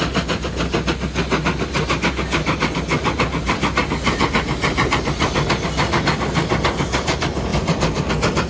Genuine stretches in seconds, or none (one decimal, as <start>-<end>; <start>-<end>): 0.0-7.5; 8.1-8.5

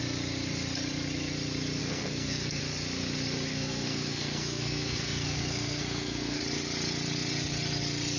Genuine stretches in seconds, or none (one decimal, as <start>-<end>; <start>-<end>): 0.0-1.8; 2.6-3.5; 6.4-8.2

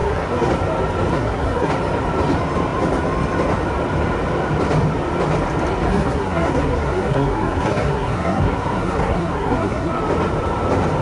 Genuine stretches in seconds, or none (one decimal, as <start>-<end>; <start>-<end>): 0.5-1.1; 1.7-5.9; 10.0-11.0

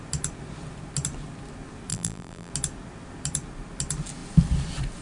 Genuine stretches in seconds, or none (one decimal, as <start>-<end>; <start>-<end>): 0.0-1.9; 2.5-5.0

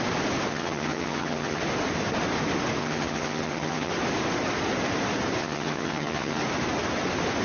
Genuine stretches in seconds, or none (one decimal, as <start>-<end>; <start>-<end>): 0.0-0.5; 1.6-2.8; 3.9-5.4; 6.4-7.4